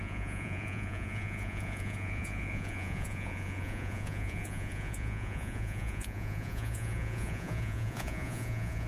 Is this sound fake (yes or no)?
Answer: yes